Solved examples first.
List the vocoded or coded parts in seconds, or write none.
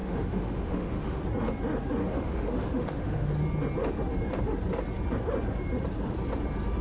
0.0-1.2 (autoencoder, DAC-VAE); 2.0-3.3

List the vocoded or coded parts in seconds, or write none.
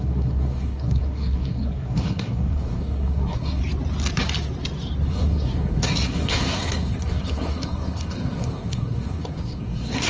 0.0-3.6 (codec, SNAC); 5.1-10.1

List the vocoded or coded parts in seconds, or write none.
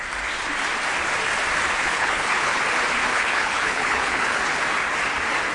1.8-2.6 (codec, HILCodec); 3.1-4.4